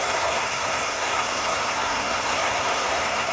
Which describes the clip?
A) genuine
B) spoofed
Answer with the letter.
B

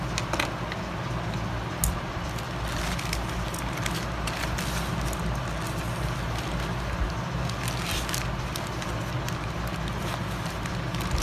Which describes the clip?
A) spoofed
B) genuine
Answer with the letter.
B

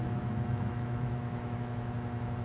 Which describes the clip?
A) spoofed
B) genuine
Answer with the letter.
A